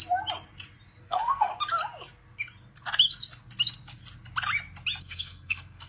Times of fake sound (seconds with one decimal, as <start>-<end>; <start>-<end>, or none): 1.0-1.5; 5.0-5.9

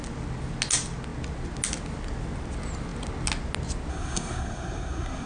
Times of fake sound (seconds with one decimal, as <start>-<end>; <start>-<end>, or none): 3.9-5.3

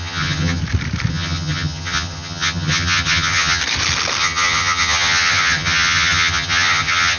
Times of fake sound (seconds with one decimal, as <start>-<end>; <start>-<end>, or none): 0.0-0.6; 1.1-3.6; 4.2-7.2